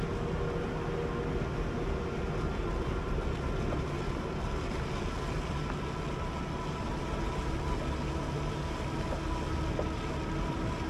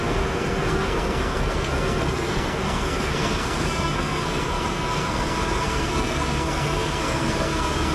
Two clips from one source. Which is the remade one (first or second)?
second